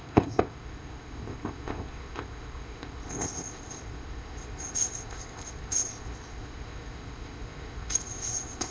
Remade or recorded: remade